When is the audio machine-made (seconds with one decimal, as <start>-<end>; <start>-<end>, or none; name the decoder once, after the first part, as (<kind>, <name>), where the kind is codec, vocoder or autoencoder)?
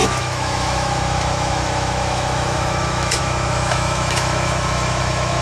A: 0.0-5.4 (autoencoder, DAC-VAE)